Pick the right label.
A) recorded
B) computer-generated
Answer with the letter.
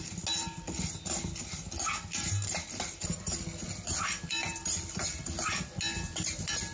A